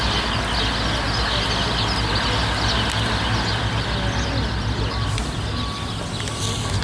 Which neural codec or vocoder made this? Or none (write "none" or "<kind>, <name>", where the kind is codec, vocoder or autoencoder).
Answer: none